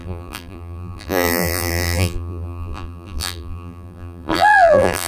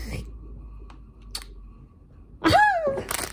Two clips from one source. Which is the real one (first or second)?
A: second